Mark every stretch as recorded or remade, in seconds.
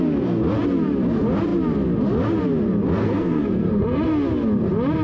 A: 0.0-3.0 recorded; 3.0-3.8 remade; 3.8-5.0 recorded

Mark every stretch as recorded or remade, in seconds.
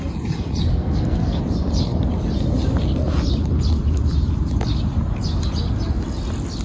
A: 0.0-0.7 recorded; 0.7-1.4 remade; 1.4-6.6 recorded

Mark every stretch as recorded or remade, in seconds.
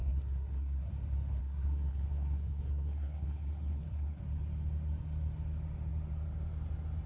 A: 0.0-0.9 remade; 0.9-1.4 recorded; 1.4-4.2 remade; 4.2-7.1 recorded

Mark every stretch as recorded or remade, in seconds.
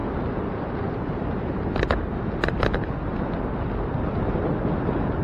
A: 0.0-5.2 recorded